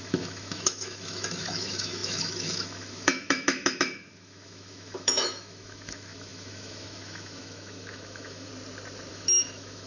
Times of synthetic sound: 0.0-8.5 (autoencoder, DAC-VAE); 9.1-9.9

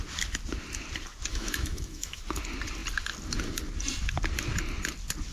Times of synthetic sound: 1.3-2.2 (autoencoder, DAC-VAE)

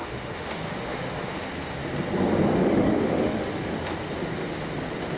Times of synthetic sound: 0.0-1.5 (autoencoder, DAC-VAE); 2.6-4.1

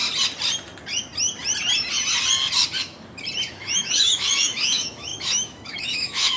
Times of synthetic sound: 3.5-6.4 (autoencoder, DAC-VAE)

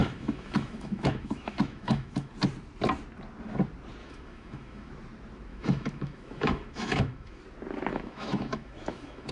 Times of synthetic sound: 0.0-2.3 (autoencoder, DAC-VAE); 4.0-4.9; 5.5-7.4; 7.9-9.3

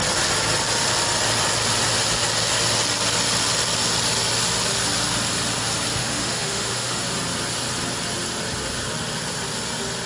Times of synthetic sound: 6.0-7.0 (autoencoder, DAC-VAE)